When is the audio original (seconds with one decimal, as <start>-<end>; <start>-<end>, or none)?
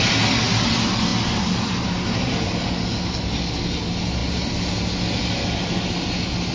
0.0-6.5